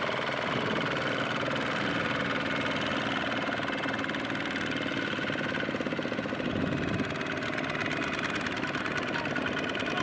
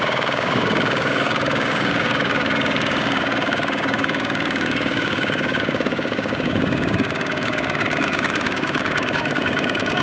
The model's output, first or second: second